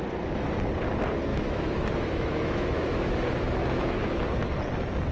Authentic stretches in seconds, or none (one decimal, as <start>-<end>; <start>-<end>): 0.0-1.3; 4.4-5.1